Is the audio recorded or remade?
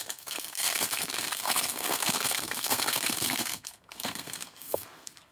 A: remade